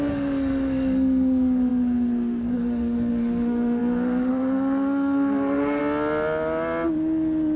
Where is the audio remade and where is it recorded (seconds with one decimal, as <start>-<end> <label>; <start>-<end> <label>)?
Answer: 0.0-5.8 remade; 5.8-7.6 recorded